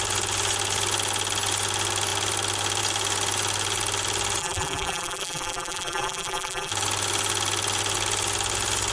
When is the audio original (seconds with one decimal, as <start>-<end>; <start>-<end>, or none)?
0.0-4.4; 6.7-8.9